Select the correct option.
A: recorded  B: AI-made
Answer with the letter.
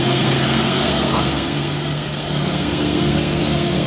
B